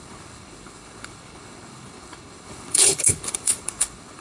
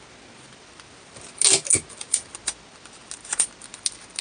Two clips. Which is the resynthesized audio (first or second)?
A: first